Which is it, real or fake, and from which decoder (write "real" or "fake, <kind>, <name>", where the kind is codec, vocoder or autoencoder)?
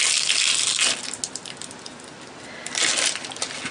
real